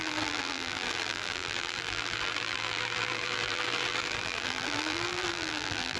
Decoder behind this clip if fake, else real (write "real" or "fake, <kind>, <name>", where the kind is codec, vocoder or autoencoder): fake, vocoder, BigVGAN v2